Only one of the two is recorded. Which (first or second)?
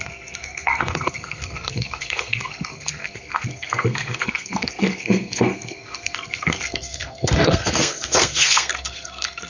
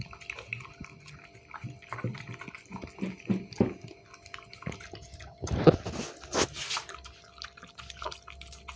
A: second